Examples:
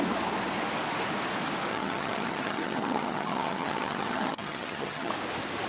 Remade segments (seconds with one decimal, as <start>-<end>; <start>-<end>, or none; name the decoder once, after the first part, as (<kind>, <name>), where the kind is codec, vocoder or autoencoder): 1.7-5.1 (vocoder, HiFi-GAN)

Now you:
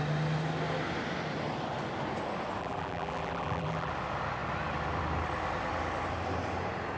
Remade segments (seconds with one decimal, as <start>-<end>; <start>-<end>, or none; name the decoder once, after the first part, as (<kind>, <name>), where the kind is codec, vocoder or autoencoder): 2.6-3.9 (vocoder, BigVGAN v2)

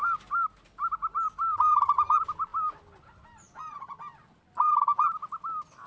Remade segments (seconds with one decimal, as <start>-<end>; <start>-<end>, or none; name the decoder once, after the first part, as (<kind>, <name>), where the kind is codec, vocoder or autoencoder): none

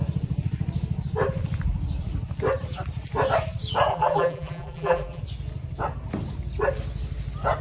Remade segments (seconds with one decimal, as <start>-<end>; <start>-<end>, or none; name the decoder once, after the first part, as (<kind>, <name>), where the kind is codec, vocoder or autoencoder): 3.9-5.2 (vocoder, BigVGAN v2)

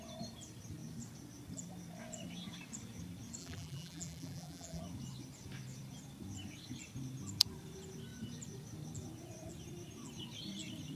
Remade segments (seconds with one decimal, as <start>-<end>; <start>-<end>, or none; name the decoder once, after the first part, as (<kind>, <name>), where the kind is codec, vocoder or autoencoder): 3.4-4.8 (vocoder, BigVGAN v2)

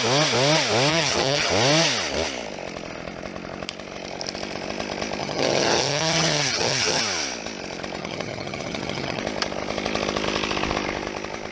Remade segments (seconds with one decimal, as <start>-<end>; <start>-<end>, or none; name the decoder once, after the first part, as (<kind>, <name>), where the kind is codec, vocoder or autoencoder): 0.9-1.5 (vocoder, HiFi-GAN); 5.2-7.0; 8.0-9.2

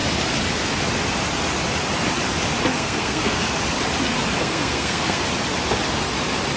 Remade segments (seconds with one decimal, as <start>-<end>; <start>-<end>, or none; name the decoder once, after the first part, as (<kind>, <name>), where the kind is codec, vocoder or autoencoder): 2.7-3.6 (codec, SNAC); 4.4-5.2